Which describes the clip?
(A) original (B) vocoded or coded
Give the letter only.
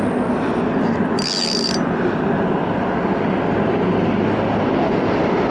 A